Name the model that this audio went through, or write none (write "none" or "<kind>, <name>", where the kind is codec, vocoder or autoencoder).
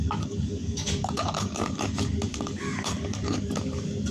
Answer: codec, DAC